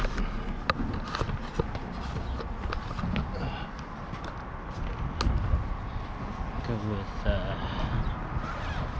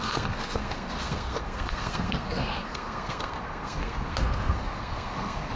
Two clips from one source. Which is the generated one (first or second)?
second